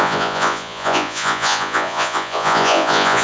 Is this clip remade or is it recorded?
remade